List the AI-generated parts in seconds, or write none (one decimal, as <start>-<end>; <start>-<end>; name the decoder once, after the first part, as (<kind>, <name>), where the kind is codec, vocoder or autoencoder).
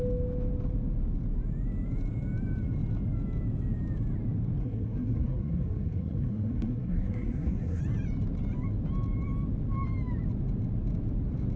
4.6-7.8 (codec, SNAC)